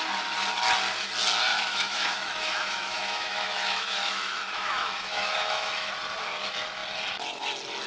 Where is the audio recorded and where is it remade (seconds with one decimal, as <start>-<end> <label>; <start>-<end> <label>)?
0.0-1.5 recorded; 1.5-5.9 remade; 5.9-7.9 recorded